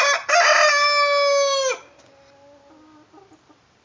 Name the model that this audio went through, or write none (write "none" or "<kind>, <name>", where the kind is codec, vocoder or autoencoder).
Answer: none